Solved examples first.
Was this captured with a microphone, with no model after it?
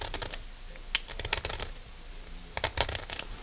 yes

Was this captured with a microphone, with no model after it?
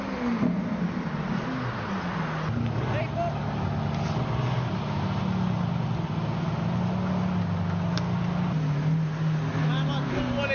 yes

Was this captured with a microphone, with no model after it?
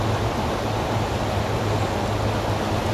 yes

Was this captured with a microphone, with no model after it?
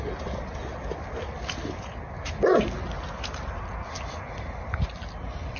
yes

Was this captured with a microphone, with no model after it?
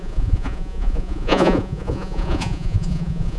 no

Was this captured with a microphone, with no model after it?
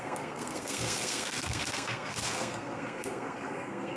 no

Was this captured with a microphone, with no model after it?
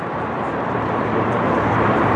no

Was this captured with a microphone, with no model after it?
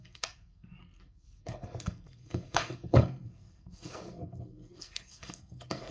no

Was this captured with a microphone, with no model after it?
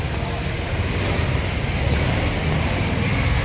yes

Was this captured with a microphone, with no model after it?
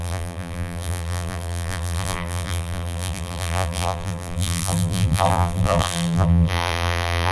no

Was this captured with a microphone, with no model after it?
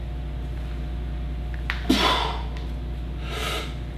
yes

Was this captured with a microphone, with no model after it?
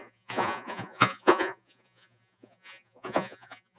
no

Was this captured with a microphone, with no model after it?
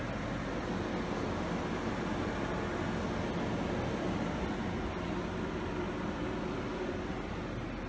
yes